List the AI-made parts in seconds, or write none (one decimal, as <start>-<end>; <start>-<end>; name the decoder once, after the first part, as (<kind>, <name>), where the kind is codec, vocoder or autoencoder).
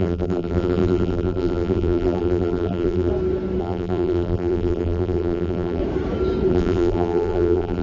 0.0-3.1 (vocoder, BigVGAN v2); 3.6-5.8; 6.5-7.8